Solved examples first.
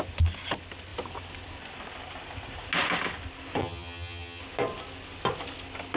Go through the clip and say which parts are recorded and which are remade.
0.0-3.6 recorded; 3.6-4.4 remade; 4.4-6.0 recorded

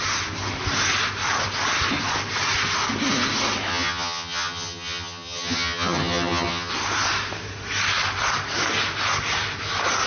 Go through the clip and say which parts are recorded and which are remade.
0.0-3.7 recorded; 3.7-6.7 remade; 6.7-10.1 recorded